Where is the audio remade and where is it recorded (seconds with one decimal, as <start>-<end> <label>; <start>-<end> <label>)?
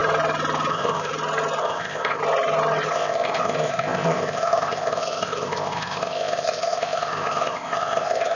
0.0-0.7 recorded; 0.7-1.1 remade; 1.1-1.6 recorded; 1.6-2.2 remade; 2.2-2.9 recorded; 2.9-8.4 remade